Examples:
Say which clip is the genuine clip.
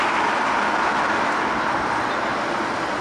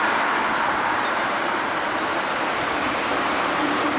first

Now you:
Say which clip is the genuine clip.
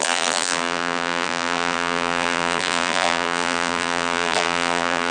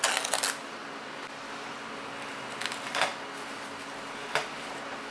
second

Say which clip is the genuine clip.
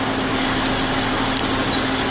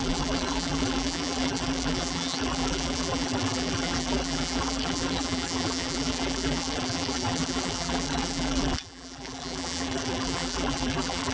first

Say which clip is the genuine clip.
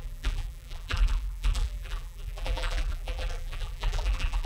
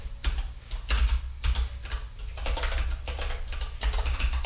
second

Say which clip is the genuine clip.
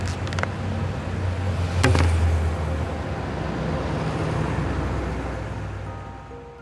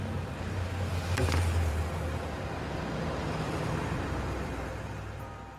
first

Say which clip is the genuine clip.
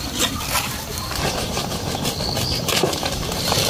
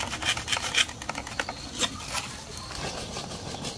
second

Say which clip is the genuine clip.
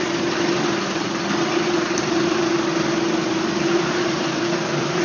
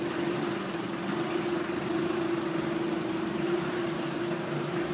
second